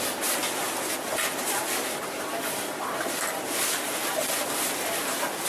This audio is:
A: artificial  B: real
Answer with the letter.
B